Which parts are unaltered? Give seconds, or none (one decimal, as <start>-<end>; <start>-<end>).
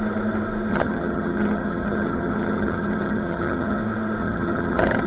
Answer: 0.0-0.7; 3.8-4.2